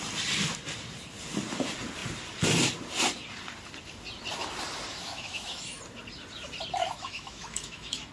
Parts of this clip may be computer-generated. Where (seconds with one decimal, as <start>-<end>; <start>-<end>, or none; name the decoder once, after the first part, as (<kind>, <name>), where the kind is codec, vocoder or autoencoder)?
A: 4.9-5.8 (autoencoder, DAC-VAE); 6.8-8.1